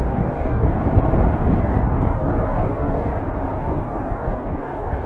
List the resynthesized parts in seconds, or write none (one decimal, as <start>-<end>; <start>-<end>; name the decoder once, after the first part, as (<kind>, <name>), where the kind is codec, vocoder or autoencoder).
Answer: 0.0-0.8 (codec, DAC); 1.6-3.1; 3.6-5.1